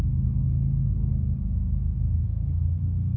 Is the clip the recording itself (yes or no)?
yes